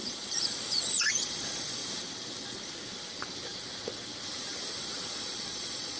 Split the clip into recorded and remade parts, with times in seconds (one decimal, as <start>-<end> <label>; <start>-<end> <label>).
0.0-1.8 remade; 1.8-4.7 recorded; 4.7-6.0 remade